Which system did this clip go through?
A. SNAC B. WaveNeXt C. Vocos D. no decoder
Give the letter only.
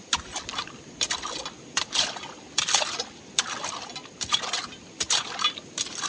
D